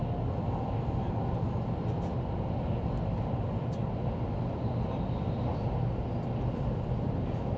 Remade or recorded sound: recorded